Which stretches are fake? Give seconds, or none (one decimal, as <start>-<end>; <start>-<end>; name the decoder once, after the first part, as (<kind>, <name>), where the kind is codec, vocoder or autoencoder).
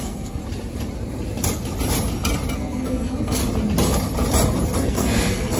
0.0-0.4 (codec, SNAC); 2.5-3.4; 4.8-5.6